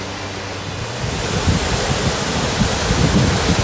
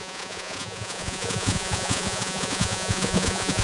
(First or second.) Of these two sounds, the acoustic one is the first